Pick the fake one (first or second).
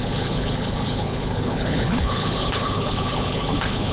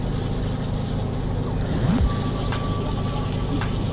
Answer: first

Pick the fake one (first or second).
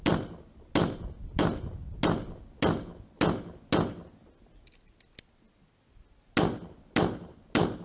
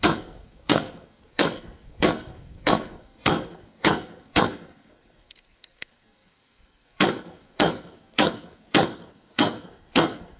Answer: second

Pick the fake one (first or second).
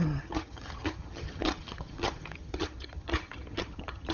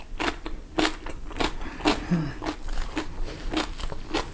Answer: first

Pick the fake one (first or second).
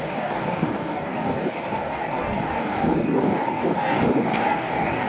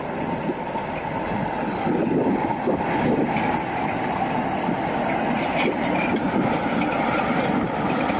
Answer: first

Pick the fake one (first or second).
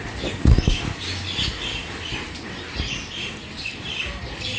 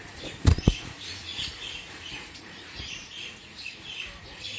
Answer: second